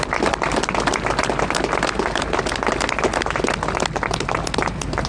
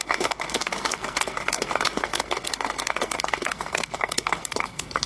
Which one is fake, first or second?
second